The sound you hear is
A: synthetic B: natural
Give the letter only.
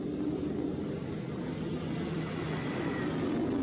B